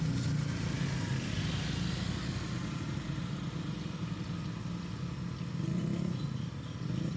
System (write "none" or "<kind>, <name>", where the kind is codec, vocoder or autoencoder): none